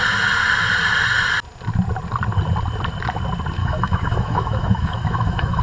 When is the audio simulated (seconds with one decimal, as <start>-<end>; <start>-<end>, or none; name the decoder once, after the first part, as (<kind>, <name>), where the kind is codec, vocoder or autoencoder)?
3.6-5.6 (autoencoder, DAC-VAE)